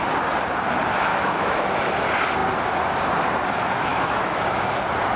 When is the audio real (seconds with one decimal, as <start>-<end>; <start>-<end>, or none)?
0.0-1.1; 1.9-3.9; 4.4-5.2